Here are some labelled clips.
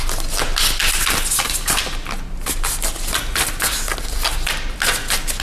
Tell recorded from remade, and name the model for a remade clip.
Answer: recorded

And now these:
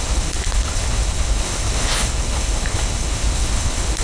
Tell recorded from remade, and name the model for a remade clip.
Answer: remade, codec, HILCodec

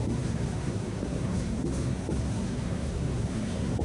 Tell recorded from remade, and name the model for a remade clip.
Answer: remade, codec, SNAC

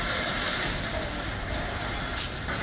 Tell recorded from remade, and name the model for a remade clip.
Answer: recorded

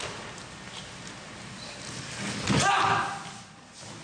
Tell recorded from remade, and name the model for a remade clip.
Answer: recorded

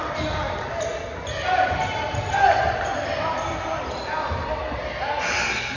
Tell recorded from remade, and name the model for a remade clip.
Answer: recorded